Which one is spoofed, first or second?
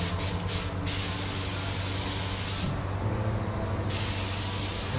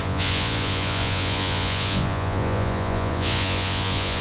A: second